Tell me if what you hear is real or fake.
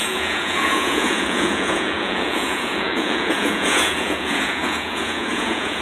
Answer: fake